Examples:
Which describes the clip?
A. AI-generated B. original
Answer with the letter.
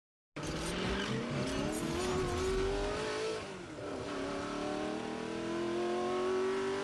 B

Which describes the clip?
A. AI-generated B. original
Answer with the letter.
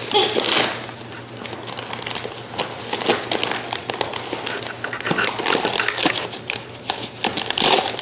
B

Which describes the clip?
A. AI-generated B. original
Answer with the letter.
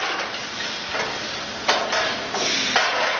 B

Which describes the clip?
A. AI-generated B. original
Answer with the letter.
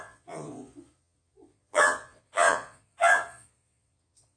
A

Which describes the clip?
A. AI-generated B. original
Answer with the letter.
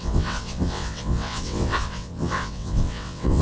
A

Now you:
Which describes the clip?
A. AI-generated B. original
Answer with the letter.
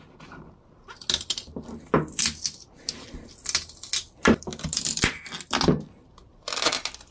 B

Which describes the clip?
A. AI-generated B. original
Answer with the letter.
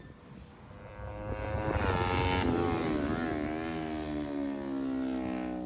B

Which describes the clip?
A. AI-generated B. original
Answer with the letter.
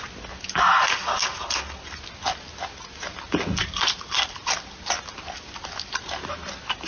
B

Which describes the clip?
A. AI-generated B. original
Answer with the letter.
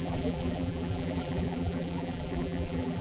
A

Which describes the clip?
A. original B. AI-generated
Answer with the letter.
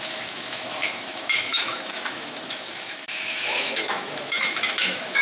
B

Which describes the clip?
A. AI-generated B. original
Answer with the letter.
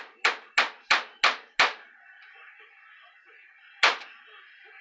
B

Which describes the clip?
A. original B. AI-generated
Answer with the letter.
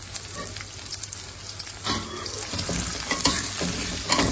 A